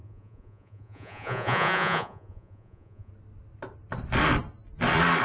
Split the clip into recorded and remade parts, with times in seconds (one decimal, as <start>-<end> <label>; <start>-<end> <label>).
0.0-3.1 remade; 3.1-5.2 recorded